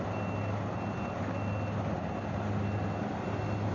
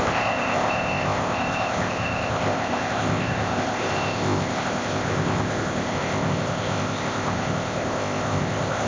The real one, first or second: first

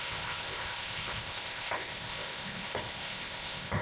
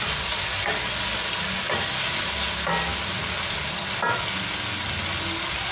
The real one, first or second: second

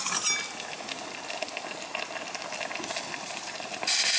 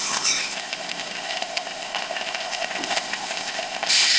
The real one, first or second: first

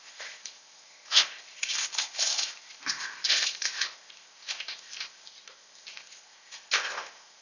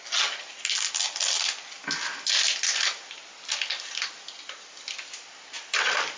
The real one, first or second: second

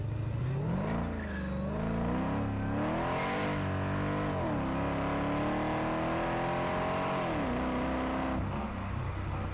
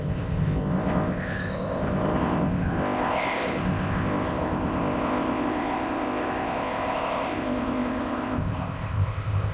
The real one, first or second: first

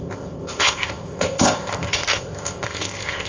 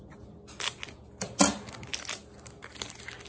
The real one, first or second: second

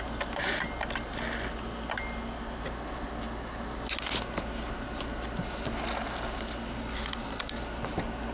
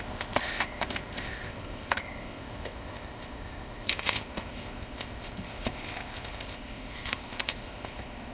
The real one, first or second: first